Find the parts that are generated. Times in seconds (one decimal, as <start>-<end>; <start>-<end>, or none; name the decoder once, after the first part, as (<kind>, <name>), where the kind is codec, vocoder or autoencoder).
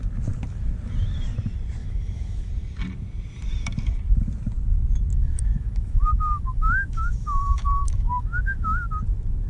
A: 1.8-2.5 (autoencoder, DAC-VAE); 5.1-8.9